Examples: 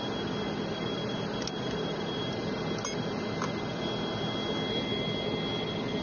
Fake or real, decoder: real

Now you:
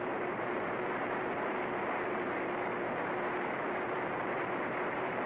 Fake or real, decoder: fake, vocoder, BigVGAN v2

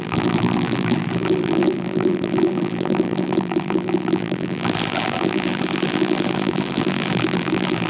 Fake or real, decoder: fake, vocoder, BigVGAN v2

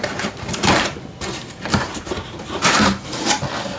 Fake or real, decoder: fake, vocoder, BigVGAN v2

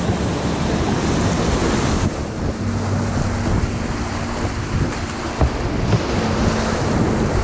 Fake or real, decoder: real